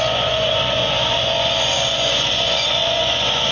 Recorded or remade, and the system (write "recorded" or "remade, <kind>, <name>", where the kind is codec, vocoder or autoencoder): remade, vocoder, Vocos